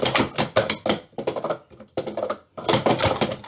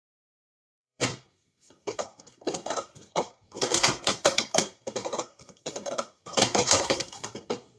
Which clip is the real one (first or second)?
first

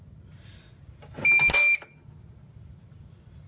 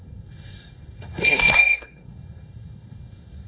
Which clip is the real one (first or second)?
first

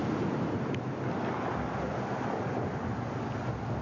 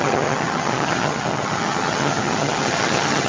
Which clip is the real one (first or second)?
first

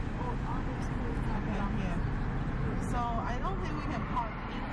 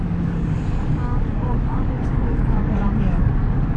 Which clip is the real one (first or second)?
first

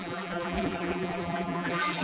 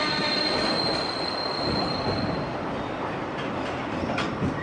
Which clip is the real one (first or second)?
second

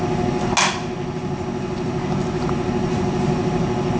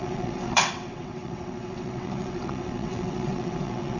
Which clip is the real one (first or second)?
first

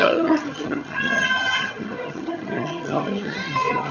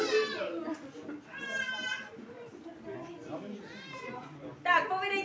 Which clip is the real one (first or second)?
second